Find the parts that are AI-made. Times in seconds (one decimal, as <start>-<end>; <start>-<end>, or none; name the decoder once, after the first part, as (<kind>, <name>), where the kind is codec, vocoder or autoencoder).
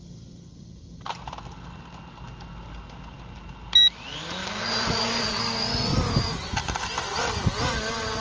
5.9-6.5 (vocoder, BigVGAN v2)